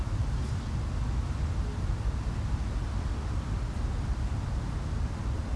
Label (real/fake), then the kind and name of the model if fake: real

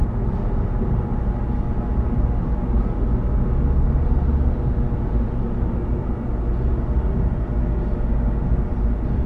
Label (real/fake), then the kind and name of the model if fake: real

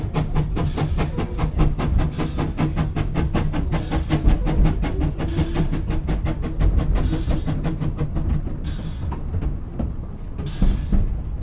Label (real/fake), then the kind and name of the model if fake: real